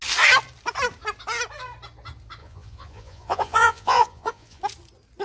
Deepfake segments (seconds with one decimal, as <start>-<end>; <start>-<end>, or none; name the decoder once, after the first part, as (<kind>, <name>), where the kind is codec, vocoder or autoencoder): 2.4-4.6 (vocoder, Vocos)